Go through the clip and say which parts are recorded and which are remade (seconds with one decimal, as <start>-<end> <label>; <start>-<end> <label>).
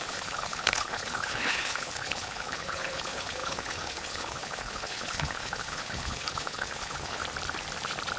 0.0-7.2 remade; 7.2-8.2 recorded